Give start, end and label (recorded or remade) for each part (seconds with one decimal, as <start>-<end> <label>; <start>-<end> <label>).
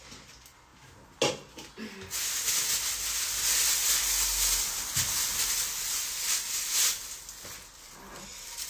0.0-8.7 recorded